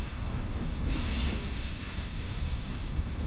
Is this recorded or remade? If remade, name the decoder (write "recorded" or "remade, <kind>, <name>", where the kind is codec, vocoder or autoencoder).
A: remade, codec, DAC